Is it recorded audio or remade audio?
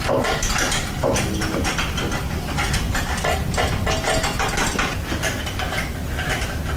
recorded